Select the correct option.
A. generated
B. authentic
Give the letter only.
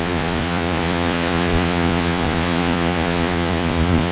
A